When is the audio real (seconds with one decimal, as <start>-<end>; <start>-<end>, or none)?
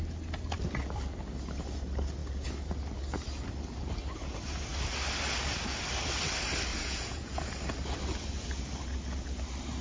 0.0-6.7; 7.5-9.8